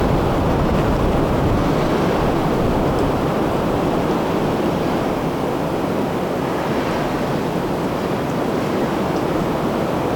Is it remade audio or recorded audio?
recorded